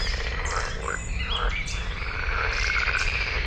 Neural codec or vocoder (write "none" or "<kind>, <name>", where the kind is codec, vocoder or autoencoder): vocoder, BigVGAN v2